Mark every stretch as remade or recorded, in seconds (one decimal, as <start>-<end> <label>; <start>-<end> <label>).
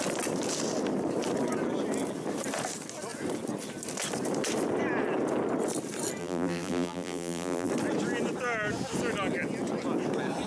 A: 0.0-6.2 recorded; 6.2-7.7 remade; 7.7-10.5 recorded